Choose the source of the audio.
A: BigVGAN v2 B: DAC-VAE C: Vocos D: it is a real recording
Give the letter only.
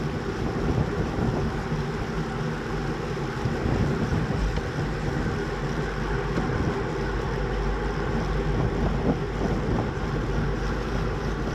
D